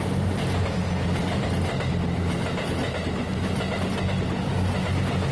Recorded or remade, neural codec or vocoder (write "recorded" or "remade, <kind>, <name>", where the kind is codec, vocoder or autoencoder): recorded